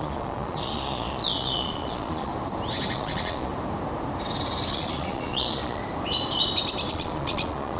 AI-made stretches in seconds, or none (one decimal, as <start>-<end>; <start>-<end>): 0.0-2.3; 2.9-3.5; 4.7-5.8; 6.9-7.8

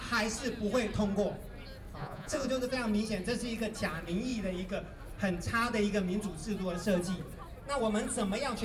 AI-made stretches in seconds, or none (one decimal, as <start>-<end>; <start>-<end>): 2.0-2.5

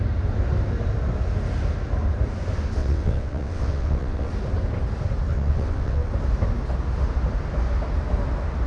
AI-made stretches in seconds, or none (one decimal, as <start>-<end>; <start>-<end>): 2.8-4.3; 5.3-6.1